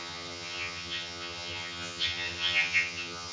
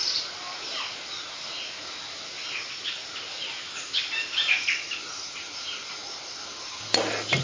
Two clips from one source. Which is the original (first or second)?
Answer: second